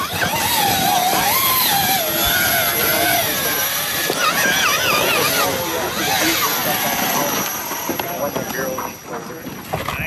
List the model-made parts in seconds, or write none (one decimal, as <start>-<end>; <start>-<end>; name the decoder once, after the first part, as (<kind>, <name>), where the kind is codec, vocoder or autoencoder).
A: 2.8-4.8 (vocoder, BigVGAN v2)